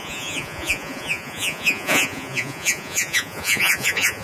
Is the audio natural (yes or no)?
no